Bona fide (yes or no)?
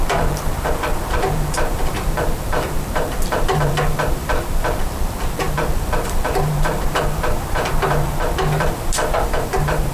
no